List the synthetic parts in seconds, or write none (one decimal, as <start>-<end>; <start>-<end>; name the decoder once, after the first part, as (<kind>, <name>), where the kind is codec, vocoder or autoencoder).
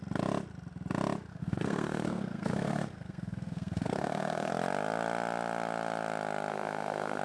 1.3-4.5 (codec, SNAC); 6.5-7.2